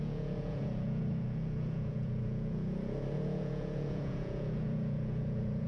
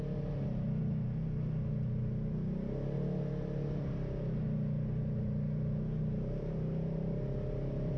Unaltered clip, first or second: second